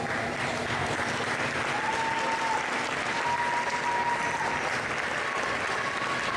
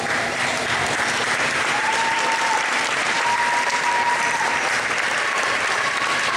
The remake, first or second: second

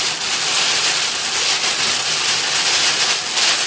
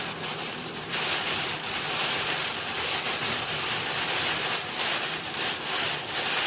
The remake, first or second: second